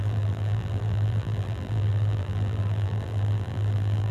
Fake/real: fake